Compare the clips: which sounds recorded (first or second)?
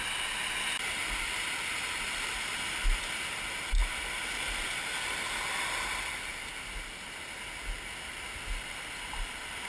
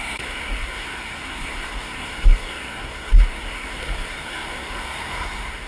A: first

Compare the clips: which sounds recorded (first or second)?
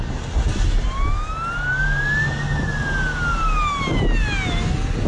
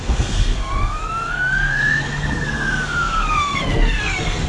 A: first